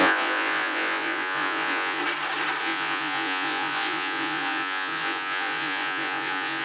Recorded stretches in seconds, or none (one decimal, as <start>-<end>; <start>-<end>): 2.0-2.6